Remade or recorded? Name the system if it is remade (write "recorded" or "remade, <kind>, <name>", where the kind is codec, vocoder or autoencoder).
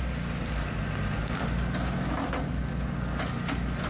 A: recorded